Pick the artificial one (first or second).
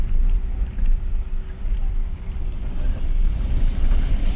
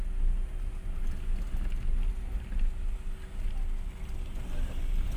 first